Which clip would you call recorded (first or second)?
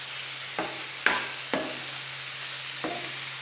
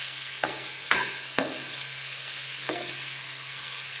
first